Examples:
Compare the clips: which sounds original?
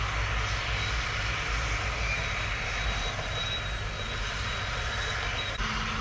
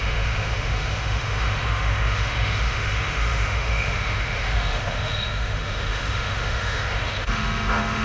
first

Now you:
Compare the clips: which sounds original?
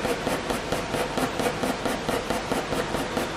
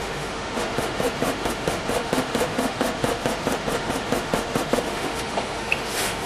first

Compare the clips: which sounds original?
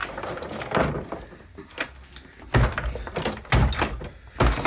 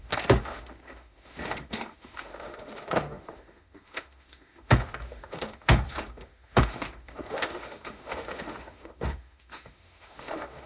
first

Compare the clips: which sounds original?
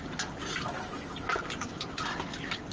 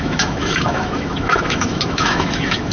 first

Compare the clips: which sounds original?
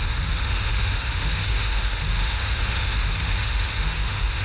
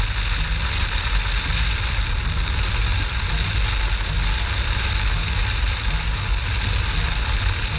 second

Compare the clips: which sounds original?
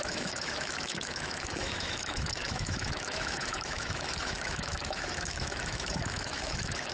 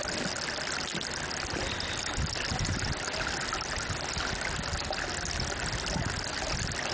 second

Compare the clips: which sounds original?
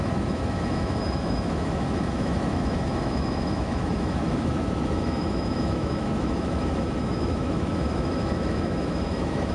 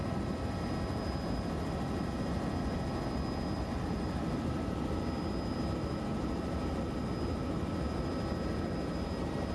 second